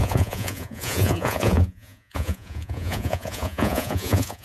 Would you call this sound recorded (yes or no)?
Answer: no